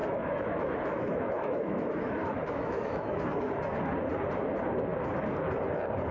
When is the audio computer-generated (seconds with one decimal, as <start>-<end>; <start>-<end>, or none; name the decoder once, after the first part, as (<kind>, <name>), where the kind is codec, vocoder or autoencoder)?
0.0-3.5 (autoencoder, DAC-VAE)